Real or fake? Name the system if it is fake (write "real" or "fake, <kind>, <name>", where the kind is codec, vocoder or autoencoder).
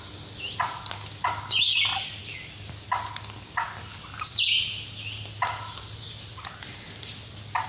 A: real